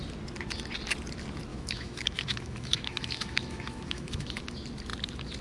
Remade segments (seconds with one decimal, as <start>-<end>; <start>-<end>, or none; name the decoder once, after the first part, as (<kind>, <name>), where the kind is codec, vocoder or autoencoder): 1.5-4.4 (autoencoder, DAC-VAE)